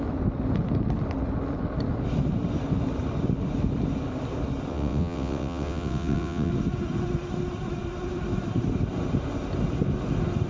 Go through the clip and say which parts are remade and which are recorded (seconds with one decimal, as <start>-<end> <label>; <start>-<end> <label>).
0.0-4.7 recorded; 4.7-6.5 remade; 6.5-10.5 recorded